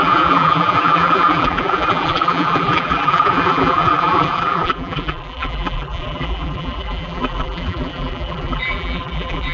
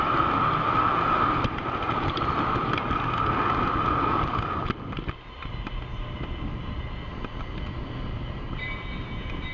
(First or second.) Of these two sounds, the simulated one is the first